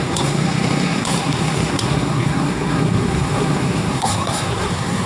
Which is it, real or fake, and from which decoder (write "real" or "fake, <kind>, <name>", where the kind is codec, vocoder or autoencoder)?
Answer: fake, codec, SNAC